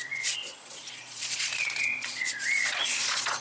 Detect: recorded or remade remade